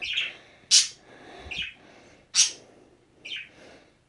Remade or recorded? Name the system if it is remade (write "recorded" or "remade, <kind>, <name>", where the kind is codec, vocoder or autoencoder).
recorded